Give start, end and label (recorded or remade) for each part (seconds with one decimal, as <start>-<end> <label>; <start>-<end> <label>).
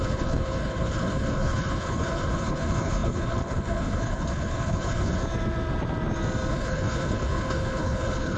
0.0-5.2 remade; 5.2-6.5 recorded; 6.5-8.4 remade